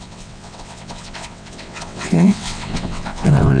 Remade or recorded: remade